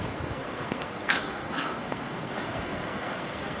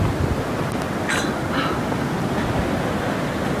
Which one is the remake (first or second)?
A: first